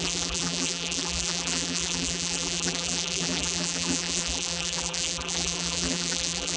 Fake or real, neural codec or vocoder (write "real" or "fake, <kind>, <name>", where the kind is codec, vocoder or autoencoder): fake, vocoder, BigVGAN v2